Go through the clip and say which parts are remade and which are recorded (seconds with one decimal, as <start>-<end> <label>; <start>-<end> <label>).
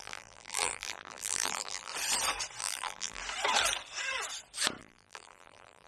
0.0-1.9 remade; 1.9-2.6 recorded; 2.6-3.2 remade; 3.2-4.8 recorded; 4.8-5.9 remade